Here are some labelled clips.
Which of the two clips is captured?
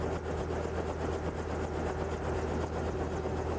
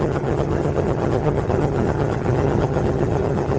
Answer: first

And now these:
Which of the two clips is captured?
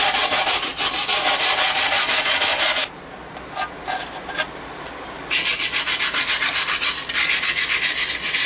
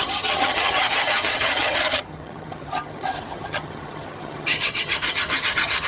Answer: first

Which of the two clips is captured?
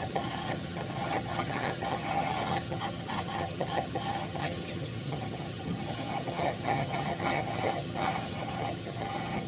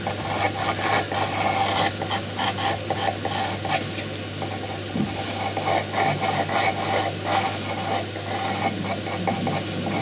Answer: second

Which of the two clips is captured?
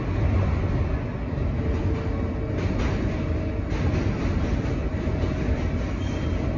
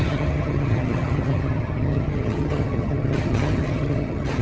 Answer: first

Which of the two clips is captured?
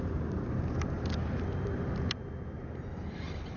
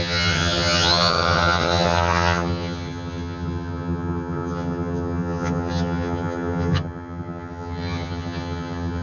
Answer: first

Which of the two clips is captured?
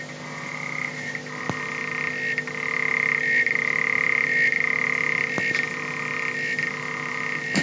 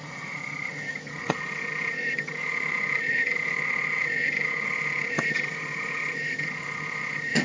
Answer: first